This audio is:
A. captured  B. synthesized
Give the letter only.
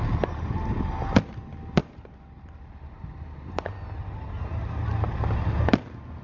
A